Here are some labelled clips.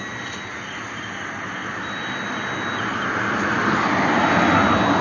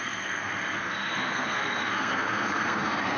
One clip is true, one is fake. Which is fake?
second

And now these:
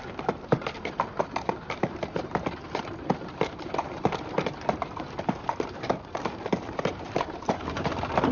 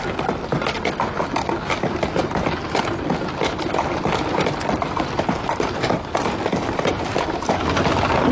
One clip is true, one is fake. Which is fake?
first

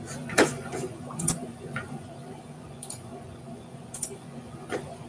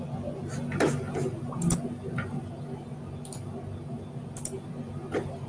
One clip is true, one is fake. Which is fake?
first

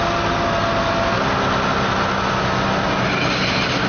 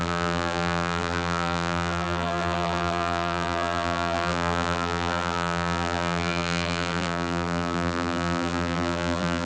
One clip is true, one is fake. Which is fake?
second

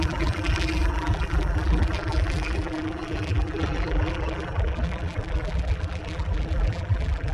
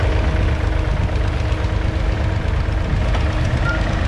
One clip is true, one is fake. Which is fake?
first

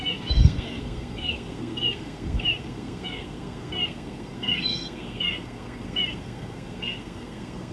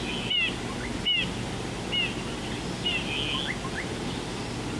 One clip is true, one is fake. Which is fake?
first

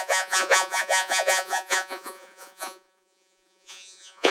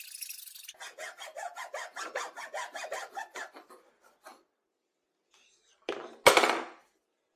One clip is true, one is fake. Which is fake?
first